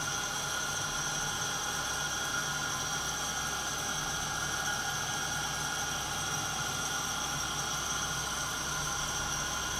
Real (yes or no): yes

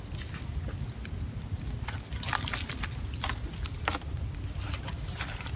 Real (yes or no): yes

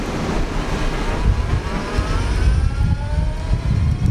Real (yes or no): yes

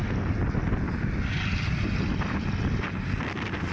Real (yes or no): yes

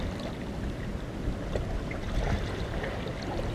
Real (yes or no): yes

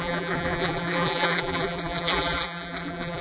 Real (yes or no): no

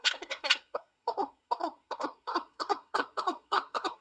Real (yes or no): no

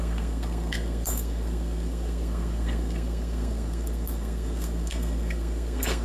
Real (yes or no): no